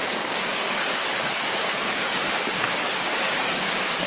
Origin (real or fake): fake